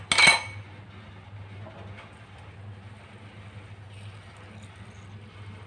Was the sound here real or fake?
real